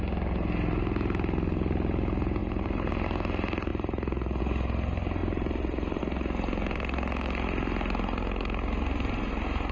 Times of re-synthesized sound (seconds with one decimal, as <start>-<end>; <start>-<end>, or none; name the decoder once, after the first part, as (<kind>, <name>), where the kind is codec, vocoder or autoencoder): 2.4-2.9 (vocoder, BigVGAN v2); 3.7-4.4; 5.2-6.0